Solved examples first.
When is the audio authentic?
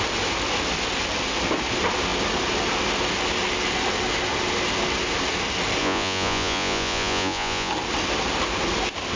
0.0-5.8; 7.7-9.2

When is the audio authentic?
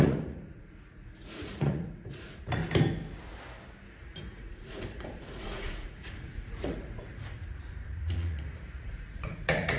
2.6-4.2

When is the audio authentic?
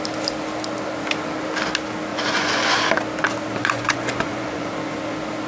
0.0-2.1; 2.8-3.6; 4.7-5.5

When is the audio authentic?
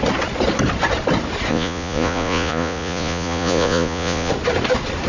0.0-1.5; 4.3-5.1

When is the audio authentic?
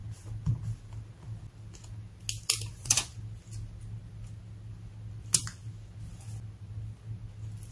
0.0-2.7; 3.1-7.7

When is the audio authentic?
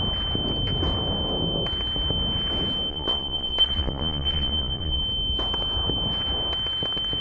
0.0-2.9; 5.0-7.2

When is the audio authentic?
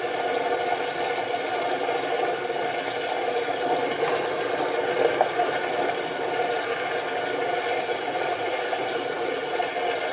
0.0-7.9; 9.6-10.1